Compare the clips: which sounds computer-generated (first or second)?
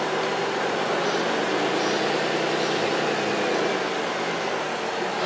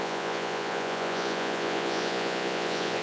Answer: second